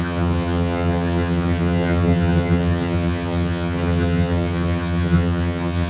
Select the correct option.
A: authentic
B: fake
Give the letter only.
B